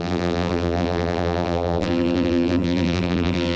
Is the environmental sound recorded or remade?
remade